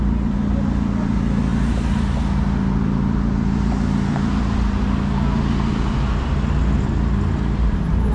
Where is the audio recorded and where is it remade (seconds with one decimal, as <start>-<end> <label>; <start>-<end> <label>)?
0.0-8.1 recorded